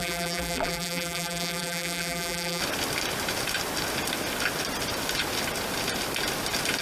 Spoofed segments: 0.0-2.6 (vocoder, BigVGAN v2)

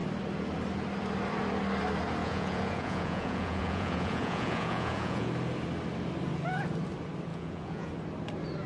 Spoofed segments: 2.2-5.3 (vocoder, Vocos); 7.3-7.9

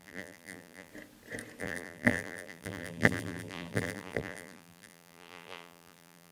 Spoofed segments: 0.0-0.9 (vocoder, BigVGAN v2); 1.6-6.3